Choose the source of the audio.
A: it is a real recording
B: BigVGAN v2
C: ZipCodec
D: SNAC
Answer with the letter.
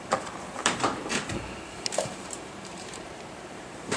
B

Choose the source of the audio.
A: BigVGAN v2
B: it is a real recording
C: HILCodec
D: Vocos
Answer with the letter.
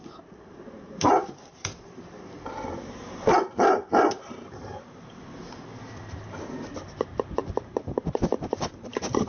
A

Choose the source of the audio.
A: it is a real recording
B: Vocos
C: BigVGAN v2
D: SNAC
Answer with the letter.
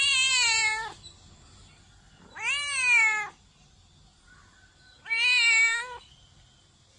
A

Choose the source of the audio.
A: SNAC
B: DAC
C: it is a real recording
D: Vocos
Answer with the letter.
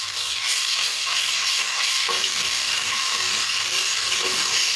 B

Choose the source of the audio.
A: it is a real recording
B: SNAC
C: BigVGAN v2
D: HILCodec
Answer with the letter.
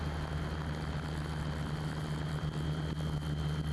A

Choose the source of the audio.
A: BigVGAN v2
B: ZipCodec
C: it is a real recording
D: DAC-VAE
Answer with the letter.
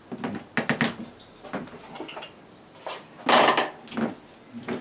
C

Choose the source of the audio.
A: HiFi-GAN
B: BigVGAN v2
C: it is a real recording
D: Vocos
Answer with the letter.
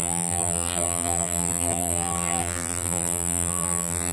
B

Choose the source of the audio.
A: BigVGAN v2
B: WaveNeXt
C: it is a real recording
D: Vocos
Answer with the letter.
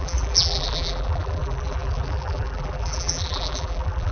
A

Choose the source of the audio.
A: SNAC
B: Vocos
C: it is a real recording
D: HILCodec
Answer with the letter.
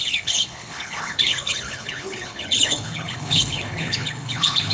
D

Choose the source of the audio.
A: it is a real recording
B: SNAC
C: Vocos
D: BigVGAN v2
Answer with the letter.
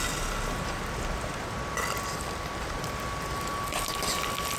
A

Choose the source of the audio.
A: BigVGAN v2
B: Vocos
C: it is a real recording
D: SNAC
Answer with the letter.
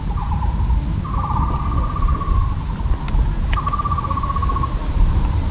C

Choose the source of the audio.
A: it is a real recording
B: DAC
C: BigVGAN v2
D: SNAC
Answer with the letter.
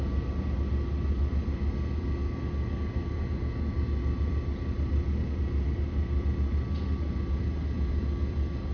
A